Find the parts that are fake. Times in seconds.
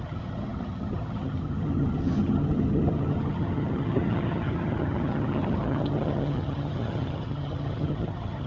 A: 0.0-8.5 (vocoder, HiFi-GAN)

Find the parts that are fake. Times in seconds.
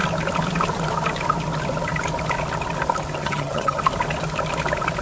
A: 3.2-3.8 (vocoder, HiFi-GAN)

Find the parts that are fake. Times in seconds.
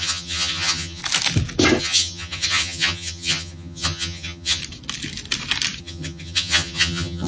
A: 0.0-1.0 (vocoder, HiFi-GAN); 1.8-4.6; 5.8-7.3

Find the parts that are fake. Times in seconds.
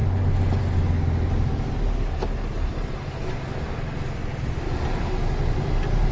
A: none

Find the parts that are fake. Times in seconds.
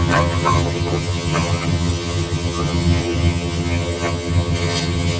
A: 0.0-5.2 (vocoder, HiFi-GAN)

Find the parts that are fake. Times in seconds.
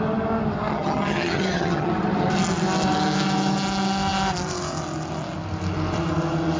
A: 0.7-1.9 (vocoder, HiFi-GAN)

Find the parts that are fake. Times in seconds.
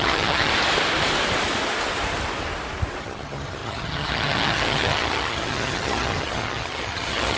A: 0.0-0.5 (vocoder, HiFi-GAN); 3.0-7.4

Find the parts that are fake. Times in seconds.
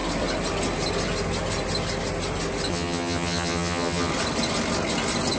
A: 2.7-4.1 (vocoder, HiFi-GAN)